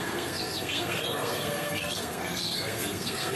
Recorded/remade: remade